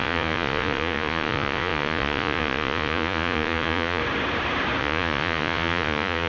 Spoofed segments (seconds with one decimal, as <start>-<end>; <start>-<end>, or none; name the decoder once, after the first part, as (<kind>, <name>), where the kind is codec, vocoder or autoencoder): 0.0-4.0 (vocoder, Vocos); 4.8-6.3